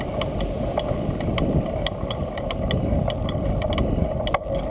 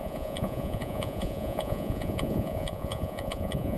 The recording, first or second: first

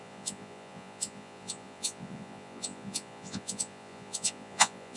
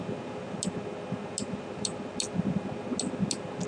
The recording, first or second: second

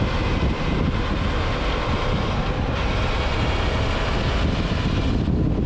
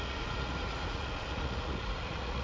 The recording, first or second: first